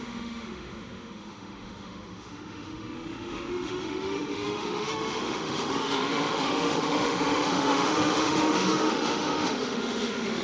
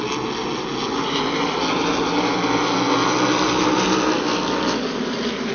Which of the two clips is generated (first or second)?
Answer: first